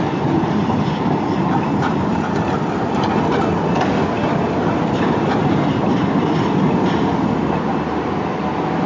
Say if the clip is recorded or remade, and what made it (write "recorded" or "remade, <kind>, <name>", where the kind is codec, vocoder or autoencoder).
recorded